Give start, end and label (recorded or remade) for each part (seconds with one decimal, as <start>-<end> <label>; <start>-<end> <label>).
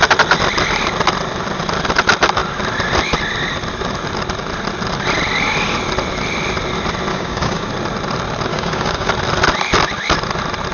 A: 0.0-7.1 recorded; 7.1-7.7 remade; 7.7-8.5 recorded; 8.5-9.1 remade; 9.1-10.7 recorded